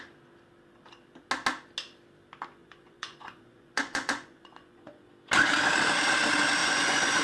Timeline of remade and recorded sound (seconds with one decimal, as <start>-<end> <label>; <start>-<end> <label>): 0.0-2.6 recorded; 2.6-5.1 remade; 5.1-6.6 recorded; 6.6-7.2 remade